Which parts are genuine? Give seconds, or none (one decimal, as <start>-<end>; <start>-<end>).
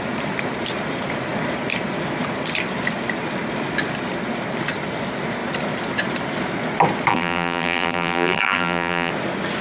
0.0-7.1; 9.1-9.6